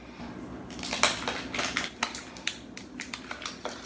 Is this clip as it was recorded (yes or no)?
yes